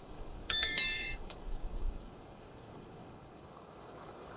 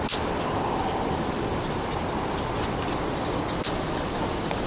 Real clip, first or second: second